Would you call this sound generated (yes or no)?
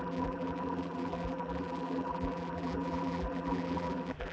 yes